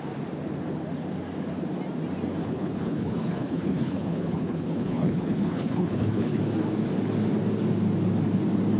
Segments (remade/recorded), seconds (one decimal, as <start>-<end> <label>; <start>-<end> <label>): 0.0-2.4 recorded; 2.4-6.4 remade; 6.4-8.8 recorded